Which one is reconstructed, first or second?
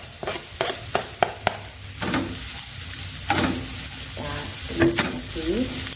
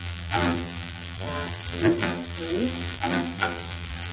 second